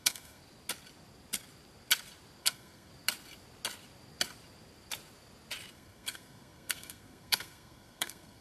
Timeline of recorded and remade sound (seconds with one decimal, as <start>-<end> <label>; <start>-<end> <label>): 0.0-0.4 remade; 0.4-2.4 recorded; 2.4-2.9 remade; 2.9-5.7 recorded; 5.7-8.4 remade